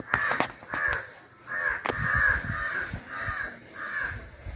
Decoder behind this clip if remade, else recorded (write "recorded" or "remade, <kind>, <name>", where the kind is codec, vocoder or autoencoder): recorded